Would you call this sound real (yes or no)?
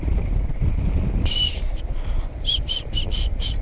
no